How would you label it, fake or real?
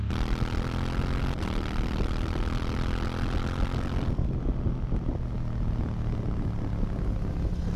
real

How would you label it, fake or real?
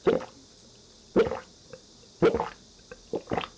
fake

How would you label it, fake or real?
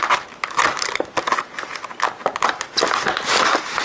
real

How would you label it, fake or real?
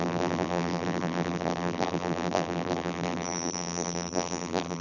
fake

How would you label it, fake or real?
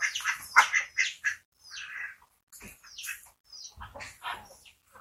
real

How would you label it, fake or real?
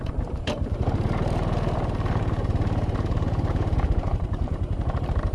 fake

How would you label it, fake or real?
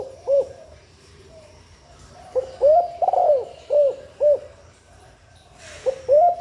fake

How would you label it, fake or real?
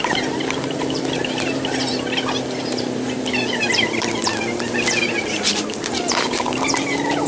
fake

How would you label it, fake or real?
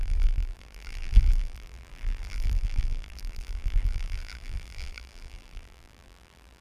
fake